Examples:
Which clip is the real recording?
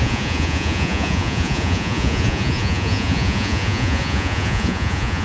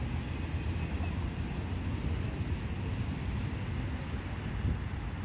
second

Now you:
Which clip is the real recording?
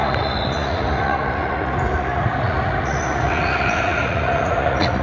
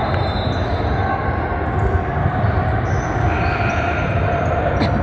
second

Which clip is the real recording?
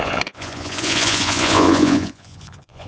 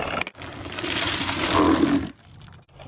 second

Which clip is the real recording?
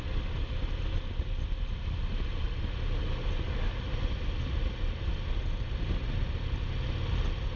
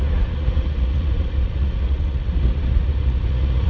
first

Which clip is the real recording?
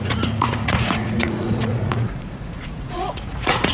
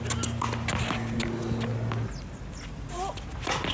second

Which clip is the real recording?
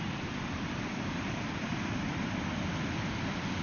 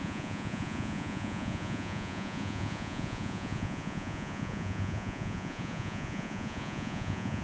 first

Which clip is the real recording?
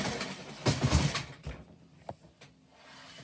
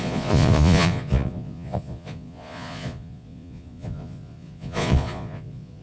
first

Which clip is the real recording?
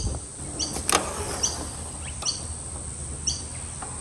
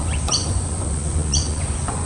first